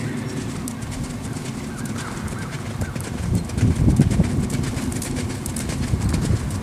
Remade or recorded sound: recorded